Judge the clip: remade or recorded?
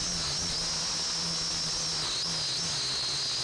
recorded